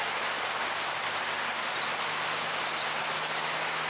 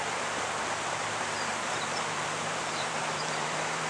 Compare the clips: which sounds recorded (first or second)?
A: first